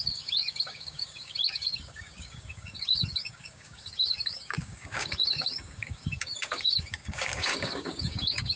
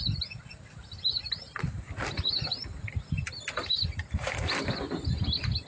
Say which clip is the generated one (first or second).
first